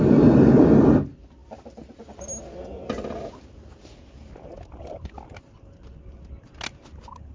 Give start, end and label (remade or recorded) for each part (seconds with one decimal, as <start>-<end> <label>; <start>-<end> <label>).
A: 0.0-7.3 recorded